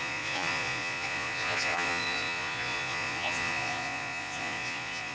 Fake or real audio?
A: fake